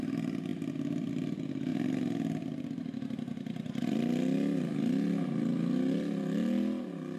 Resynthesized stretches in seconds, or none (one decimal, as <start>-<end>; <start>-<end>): none